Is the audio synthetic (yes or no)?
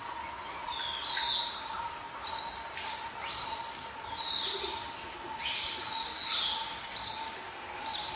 no